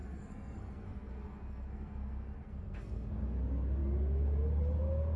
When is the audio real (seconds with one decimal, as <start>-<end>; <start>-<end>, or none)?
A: 3.1-5.2